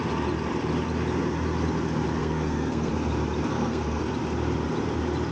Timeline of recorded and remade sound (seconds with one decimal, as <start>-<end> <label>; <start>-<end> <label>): 0.0-2.2 recorded; 2.2-2.9 remade; 2.9-3.5 recorded; 3.5-4.0 remade; 4.0-5.3 recorded